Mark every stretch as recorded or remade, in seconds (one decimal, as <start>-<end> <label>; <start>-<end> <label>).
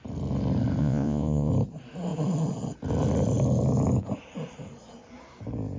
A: 0.0-0.8 recorded; 0.8-1.5 remade; 1.5-5.8 recorded